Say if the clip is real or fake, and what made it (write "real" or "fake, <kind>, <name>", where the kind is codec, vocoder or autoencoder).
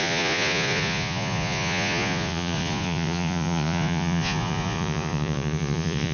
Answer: fake, vocoder, Vocos